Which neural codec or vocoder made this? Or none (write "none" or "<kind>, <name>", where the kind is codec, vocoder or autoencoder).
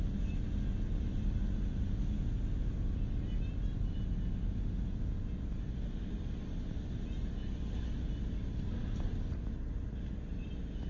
none